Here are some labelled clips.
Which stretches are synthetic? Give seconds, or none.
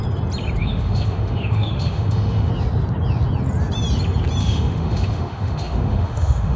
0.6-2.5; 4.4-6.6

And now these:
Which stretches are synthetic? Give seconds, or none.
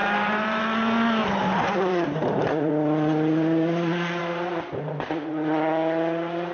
0.0-0.6; 1.2-2.7; 4.2-5.3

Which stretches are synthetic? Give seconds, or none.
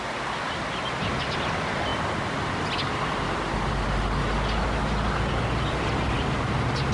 none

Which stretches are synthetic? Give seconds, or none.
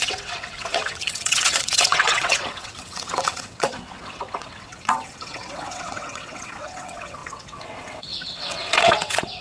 0.0-9.4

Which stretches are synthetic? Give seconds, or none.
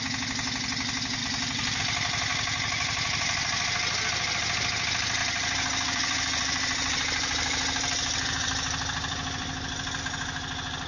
1.2-1.8; 5.2-10.0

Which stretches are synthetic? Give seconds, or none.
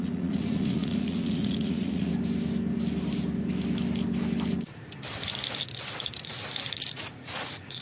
0.0-2.1; 6.8-7.8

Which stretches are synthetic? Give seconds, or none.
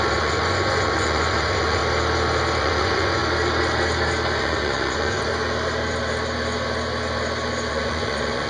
0.0-1.8; 2.6-3.2; 4.4-5.3; 7.7-8.5